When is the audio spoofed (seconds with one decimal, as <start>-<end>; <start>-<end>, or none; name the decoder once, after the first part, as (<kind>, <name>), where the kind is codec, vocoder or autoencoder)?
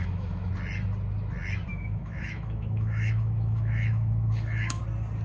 0.0-0.5 (autoencoder, DAC-VAE); 1.7-4.8